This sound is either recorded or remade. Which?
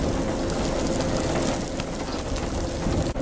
recorded